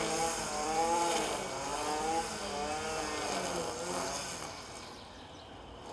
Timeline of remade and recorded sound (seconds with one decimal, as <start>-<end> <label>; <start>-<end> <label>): 0.0-1.7 remade; 1.7-5.2 recorded; 5.2-5.9 remade